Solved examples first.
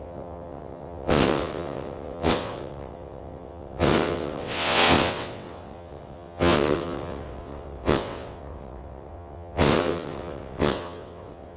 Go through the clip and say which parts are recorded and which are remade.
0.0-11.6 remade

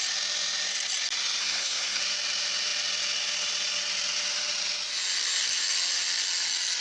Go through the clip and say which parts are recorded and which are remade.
0.0-1.4 recorded; 1.4-2.0 remade; 2.0-6.8 recorded

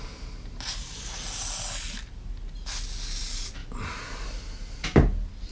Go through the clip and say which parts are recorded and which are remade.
0.0-5.5 recorded

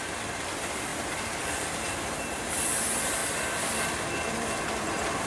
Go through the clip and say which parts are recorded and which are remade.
0.0-5.3 remade